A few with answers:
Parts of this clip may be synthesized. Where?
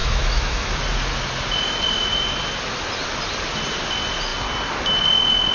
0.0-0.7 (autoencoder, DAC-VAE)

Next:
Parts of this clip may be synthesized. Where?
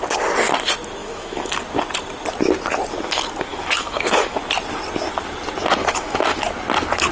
1.0-1.6 (autoencoder, DAC-VAE); 3.5-4.4; 5.8-6.4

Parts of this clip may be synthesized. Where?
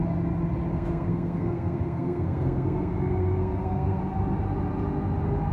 0.7-4.0 (codec, SNAC)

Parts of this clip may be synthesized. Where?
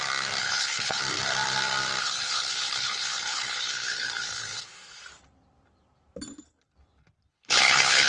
0.4-1.0 (codec, HILCodec); 2.0-5.0; 7.3-8.1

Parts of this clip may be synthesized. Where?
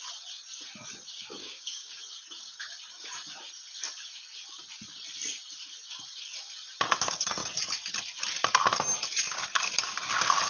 1.4-2.0 (codec, DAC)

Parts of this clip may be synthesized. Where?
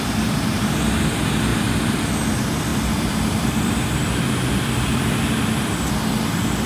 1.5-2.1 (vocoder, BigVGAN v2); 2.7-5.9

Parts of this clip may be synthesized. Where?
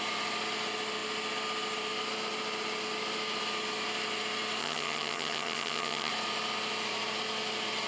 4.6-6.1 (vocoder, HiFi-GAN)